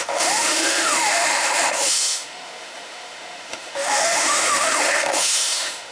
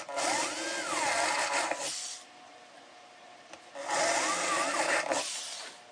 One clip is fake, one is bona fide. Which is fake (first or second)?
first